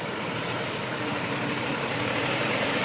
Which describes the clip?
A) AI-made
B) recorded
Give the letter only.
A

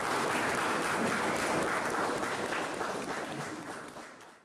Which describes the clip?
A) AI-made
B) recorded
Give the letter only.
B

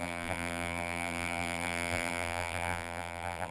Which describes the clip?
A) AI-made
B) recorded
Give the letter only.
A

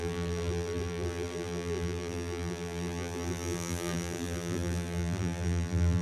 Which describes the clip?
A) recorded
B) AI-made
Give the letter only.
B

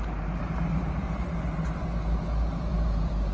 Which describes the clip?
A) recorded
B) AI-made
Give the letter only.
B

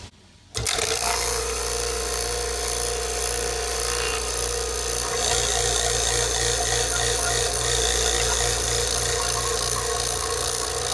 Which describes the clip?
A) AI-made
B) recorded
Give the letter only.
B